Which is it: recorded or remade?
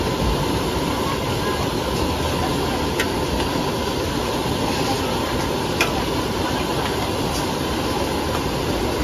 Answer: recorded